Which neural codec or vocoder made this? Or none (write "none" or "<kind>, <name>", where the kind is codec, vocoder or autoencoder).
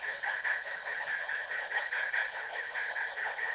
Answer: codec, HILCodec